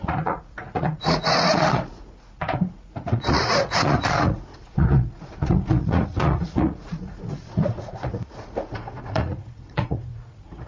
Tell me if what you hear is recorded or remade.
remade